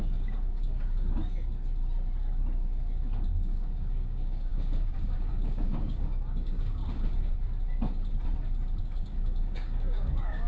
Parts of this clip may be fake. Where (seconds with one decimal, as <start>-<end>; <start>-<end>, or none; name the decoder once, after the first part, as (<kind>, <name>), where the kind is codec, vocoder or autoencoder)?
0.0-1.2 (codec, DAC); 3.3-6.8; 8.8-10.5